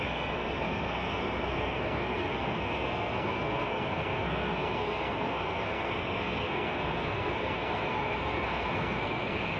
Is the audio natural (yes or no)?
no